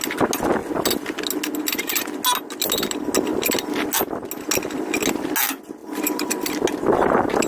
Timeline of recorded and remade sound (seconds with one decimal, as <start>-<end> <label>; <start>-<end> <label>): 0.0-5.8 recorded; 5.8-6.3 remade; 6.3-7.5 recorded

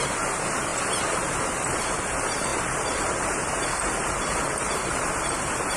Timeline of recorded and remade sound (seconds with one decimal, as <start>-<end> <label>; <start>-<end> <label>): 0.0-5.8 remade

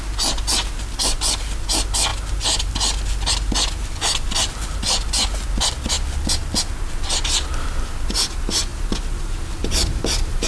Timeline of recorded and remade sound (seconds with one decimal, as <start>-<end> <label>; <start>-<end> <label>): 0.0-10.5 recorded

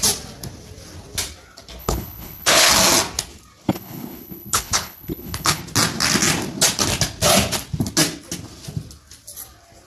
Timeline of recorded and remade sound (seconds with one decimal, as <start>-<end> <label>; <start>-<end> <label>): 0.0-1.8 recorded; 1.8-2.7 remade; 2.7-3.7 recorded; 3.7-5.6 remade; 5.6-9.9 recorded

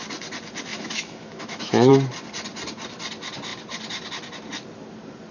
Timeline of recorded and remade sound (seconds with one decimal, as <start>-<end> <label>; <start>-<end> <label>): 0.0-0.7 recorded; 0.7-1.9 remade; 1.9-5.3 recorded

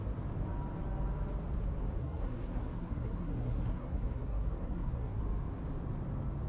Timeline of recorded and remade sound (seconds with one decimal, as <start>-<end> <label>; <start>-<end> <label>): 0.0-2.0 recorded; 2.0-5.2 remade; 5.2-6.5 recorded

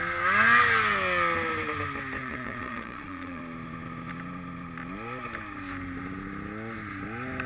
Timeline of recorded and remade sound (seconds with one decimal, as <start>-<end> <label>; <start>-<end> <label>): 0.0-2.2 recorded; 2.2-3.4 remade; 3.4-7.5 recorded

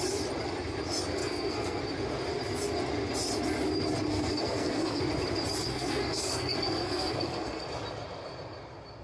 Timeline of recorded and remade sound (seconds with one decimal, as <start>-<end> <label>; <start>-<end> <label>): 0.0-1.2 recorded; 1.2-1.8 remade; 1.8-4.1 recorded; 4.1-5.0 remade; 5.0-5.7 recorded; 5.7-7.6 remade; 7.6-9.0 recorded